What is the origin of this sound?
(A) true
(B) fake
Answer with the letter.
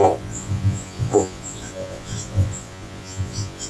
B